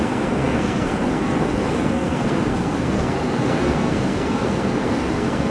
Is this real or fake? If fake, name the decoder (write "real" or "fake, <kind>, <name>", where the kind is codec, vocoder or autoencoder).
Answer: fake, codec, SNAC